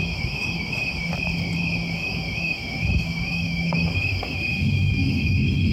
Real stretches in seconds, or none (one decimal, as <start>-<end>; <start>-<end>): 1.1-1.9

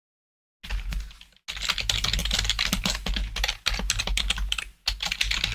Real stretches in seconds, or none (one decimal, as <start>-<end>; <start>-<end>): 0.0-5.5

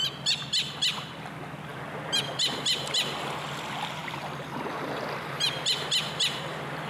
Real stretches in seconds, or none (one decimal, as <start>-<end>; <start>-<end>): 0.0-6.9

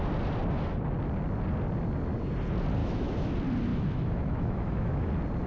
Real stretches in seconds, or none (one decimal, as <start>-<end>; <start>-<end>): 0.0-2.8; 3.3-3.7; 5.1-5.5

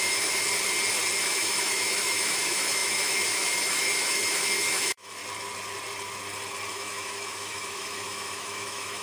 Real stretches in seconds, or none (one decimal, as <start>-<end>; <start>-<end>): 0.4-1.2; 5.2-6.7